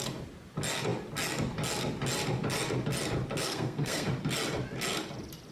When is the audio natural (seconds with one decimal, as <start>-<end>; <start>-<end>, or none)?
0.0-3.4; 4.1-5.5